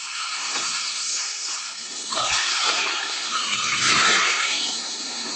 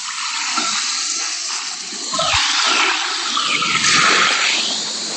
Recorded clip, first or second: second